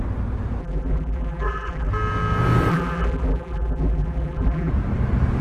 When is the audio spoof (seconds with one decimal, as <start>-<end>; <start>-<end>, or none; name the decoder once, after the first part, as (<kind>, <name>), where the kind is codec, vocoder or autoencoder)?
0.6-1.9 (vocoder, BigVGAN v2); 2.7-4.7